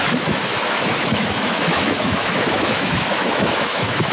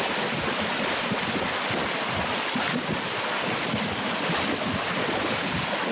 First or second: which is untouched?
second